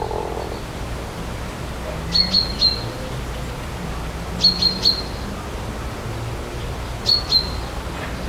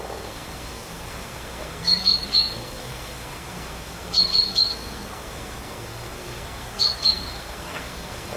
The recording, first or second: first